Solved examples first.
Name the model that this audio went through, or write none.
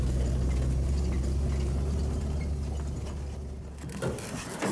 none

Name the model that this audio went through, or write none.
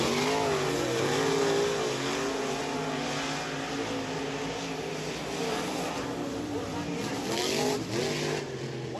none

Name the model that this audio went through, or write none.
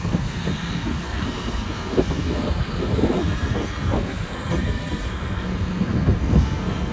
codec, SNAC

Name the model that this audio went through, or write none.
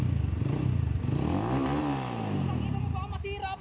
none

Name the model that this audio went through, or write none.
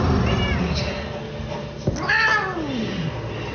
none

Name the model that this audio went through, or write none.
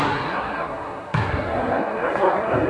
codec, SNAC